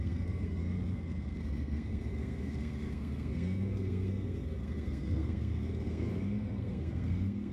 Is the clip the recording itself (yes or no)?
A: no